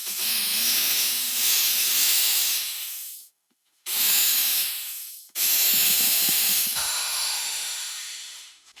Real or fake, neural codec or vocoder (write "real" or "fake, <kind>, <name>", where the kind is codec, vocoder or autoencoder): fake, autoencoder, DAC-VAE